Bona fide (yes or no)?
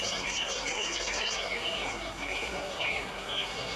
no